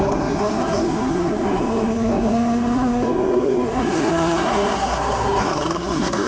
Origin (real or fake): fake